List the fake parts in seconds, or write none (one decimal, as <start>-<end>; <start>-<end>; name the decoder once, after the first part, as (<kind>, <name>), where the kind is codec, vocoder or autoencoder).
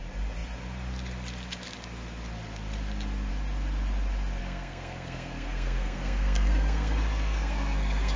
4.4-8.2 (codec, SNAC)